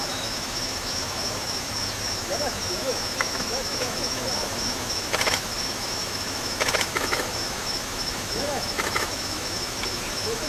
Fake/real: fake